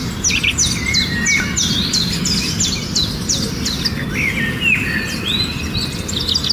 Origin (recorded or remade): recorded